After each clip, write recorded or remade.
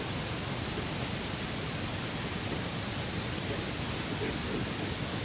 recorded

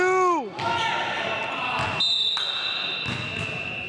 recorded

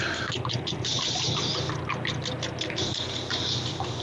recorded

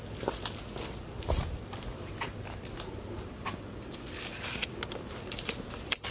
recorded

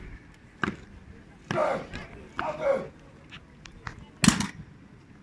recorded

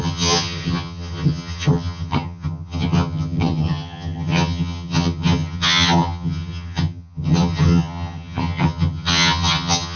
remade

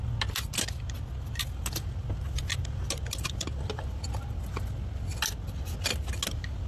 recorded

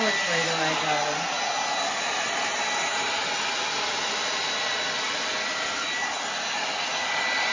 recorded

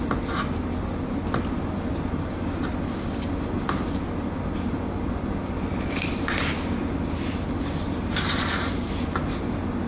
recorded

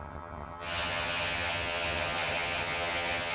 remade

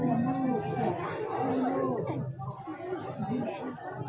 recorded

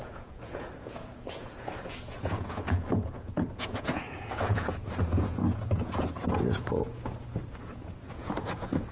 remade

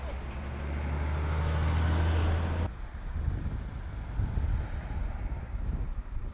recorded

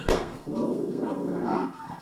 remade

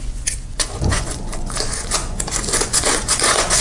remade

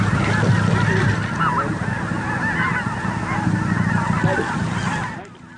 recorded